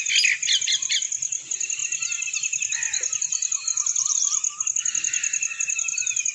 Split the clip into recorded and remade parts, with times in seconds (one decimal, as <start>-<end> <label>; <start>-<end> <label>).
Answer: 0.0-6.3 recorded